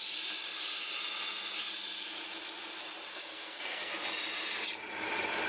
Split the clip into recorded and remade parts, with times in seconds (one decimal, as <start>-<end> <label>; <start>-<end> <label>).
0.0-3.1 recorded; 3.1-3.9 remade; 3.9-5.5 recorded